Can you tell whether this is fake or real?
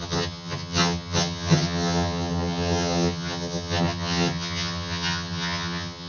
fake